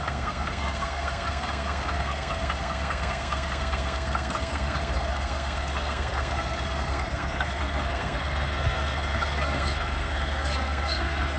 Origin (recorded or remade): remade